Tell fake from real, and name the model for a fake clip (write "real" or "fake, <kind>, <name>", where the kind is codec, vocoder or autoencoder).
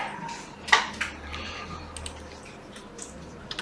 real